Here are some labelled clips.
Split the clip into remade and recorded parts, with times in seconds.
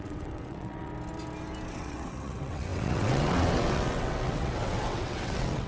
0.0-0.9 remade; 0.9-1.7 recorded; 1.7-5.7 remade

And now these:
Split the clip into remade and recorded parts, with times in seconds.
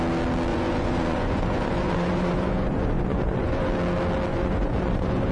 0.0-0.5 recorded; 0.5-3.7 remade; 3.7-4.3 recorded; 4.3-5.3 remade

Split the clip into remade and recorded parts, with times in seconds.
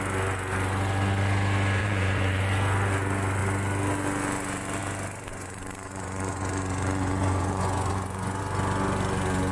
0.0-1.8 recorded; 1.8-2.4 remade; 2.4-5.3 recorded; 5.3-8.4 remade; 8.4-9.5 recorded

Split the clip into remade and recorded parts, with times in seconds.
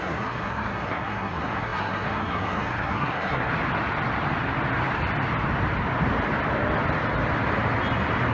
0.0-3.5 remade; 3.5-8.3 recorded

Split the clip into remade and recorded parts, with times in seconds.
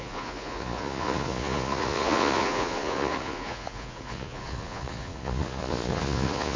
0.0-6.6 remade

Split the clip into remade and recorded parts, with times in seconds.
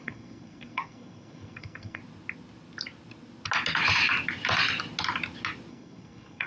0.0-2.0 remade; 2.0-5.7 recorded; 5.7-6.5 remade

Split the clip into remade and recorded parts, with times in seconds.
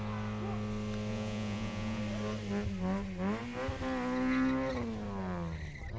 0.0-1.1 recorded; 1.1-2.0 remade; 2.0-6.0 recorded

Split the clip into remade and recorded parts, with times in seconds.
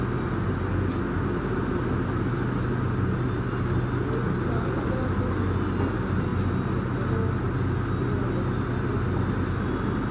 0.0-10.1 recorded